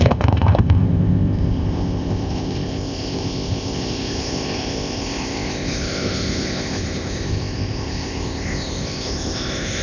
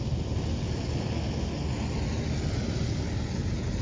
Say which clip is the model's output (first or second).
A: first